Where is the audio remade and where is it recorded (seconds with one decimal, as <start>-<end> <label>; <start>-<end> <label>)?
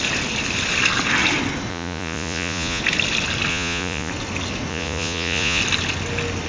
0.0-1.7 recorded; 1.7-2.8 remade; 2.8-3.5 recorded; 3.5-4.1 remade; 4.1-4.7 recorded; 4.7-5.6 remade; 5.6-6.5 recorded